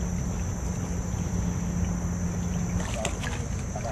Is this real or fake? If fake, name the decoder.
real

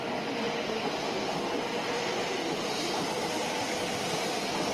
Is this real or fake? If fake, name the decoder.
real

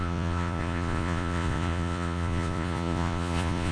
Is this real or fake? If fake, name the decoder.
fake, vocoder, Vocos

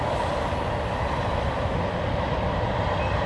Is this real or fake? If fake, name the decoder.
fake, vocoder, BigVGAN v2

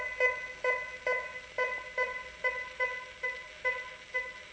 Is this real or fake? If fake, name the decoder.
real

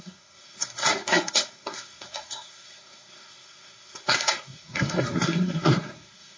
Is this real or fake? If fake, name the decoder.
fake, codec, SNAC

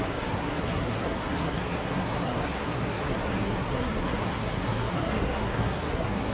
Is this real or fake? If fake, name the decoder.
fake, codec, SNAC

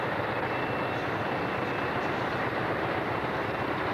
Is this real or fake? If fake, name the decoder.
real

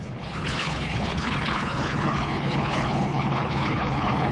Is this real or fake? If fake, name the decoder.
fake, codec, HILCodec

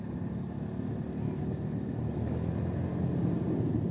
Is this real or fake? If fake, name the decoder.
real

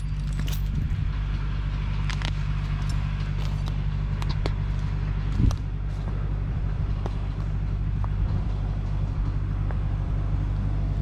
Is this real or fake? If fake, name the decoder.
real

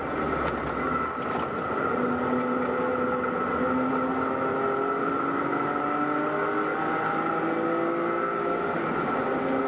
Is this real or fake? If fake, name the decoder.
real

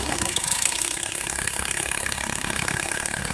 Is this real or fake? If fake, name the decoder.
fake, codec, SNAC